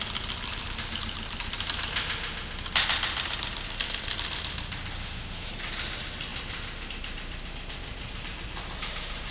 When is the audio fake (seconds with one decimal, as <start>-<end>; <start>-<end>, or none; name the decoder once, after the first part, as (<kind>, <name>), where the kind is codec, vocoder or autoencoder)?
5.0-5.5 (autoencoder, DAC-VAE)